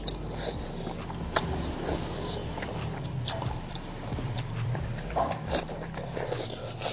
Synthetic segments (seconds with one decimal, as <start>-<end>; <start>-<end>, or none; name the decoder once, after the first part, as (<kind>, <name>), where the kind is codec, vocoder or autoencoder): 2.4-5.6 (vocoder, BigVGAN v2)